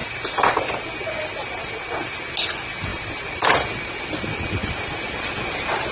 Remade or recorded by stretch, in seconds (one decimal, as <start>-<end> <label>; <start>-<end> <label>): 0.0-2.9 recorded; 2.9-4.0 remade; 4.0-4.6 recorded; 4.6-5.3 remade; 5.3-5.9 recorded

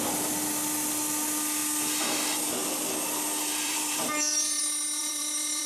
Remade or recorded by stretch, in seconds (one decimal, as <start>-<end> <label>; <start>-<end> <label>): 0.0-3.5 recorded; 3.5-4.6 remade; 4.6-5.0 recorded; 5.0-5.7 remade

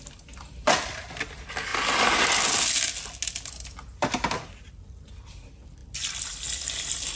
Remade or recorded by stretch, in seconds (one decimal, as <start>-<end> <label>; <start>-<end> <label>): 0.0-1.7 remade; 1.7-5.1 recorded; 5.1-7.2 remade

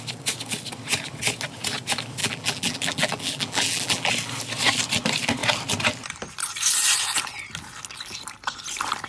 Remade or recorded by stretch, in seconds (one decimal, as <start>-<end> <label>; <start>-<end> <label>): 0.0-2.2 recorded; 2.2-4.1 remade; 4.1-9.1 recorded

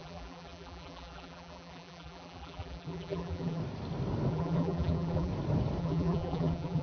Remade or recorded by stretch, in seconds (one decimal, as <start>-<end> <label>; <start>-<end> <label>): 0.0-3.6 remade; 3.6-4.3 recorded; 4.3-5.3 remade; 5.3-5.8 recorded; 5.8-6.8 remade

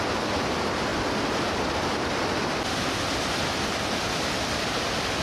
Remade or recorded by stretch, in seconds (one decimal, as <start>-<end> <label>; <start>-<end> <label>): 0.0-5.2 recorded

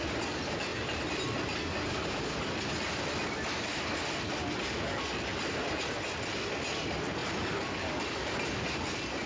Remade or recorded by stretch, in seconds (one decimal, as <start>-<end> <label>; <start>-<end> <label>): 0.0-9.3 recorded